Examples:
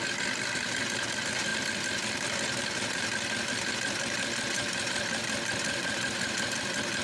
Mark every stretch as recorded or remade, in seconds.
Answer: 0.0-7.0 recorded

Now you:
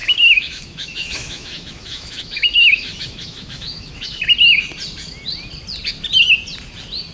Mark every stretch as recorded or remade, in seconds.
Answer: 0.0-4.2 remade; 4.2-7.1 recorded

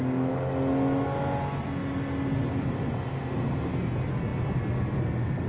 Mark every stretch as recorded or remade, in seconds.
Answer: 0.0-5.5 recorded